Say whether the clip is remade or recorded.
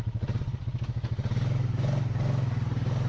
recorded